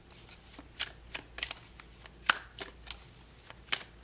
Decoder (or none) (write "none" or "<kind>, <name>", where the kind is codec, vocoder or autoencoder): none